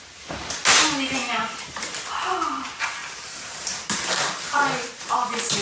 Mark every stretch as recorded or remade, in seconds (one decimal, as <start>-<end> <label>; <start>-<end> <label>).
0.0-1.2 recorded; 1.2-1.9 remade; 1.9-5.6 recorded